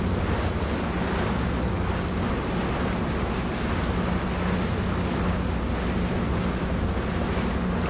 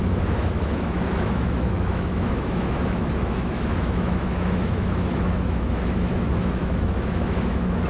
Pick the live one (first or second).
first